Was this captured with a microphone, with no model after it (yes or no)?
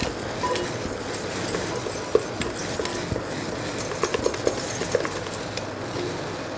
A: yes